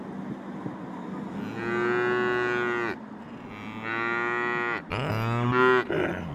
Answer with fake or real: real